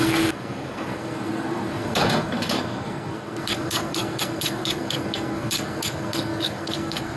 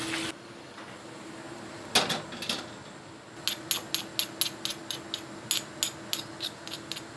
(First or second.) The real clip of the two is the second